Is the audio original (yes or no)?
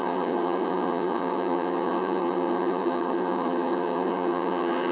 no